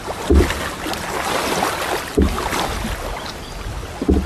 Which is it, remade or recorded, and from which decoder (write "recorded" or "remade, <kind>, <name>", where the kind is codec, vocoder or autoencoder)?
recorded